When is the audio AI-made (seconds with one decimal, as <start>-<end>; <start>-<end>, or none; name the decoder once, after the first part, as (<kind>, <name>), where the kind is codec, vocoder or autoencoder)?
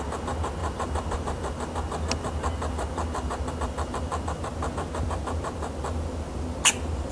none